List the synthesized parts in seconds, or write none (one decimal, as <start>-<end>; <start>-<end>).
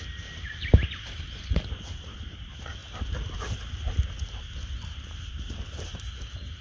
0.0-2.8; 5.3-6.6